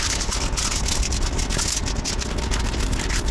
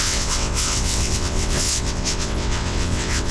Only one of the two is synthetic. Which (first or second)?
second